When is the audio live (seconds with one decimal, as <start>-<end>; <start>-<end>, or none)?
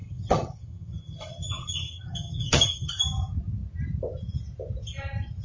3.0-5.4